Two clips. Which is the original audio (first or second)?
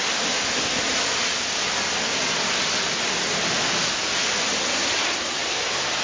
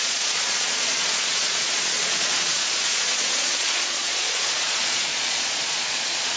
first